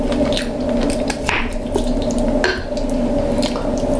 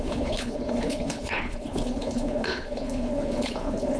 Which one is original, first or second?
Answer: first